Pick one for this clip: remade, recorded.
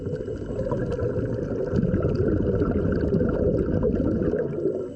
recorded